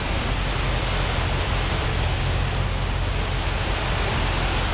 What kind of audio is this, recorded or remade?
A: recorded